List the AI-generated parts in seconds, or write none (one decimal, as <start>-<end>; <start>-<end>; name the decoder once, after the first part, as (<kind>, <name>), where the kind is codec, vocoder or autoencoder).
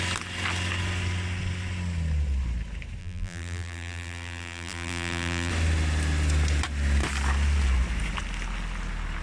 3.0-5.5 (vocoder, BigVGAN v2)